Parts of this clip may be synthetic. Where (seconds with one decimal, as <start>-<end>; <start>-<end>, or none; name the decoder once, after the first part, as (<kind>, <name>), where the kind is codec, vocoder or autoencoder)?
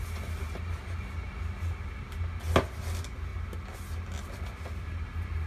none